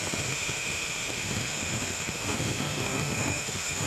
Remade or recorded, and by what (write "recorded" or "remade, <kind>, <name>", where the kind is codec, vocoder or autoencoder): remade, autoencoder, DAC-VAE